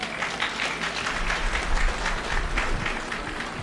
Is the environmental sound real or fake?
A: real